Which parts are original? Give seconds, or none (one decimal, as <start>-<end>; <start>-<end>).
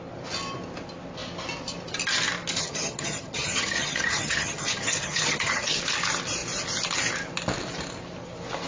0.0-2.6; 5.8-8.7